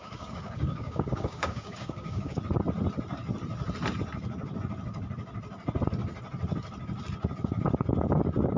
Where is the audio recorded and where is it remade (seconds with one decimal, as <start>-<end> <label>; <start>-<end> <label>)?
0.0-2.4 remade; 2.4-8.6 recorded